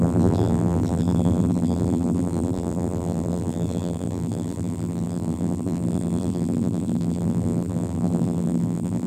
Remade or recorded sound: remade